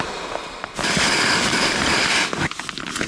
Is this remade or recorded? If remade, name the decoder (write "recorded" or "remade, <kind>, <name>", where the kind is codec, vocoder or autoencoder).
recorded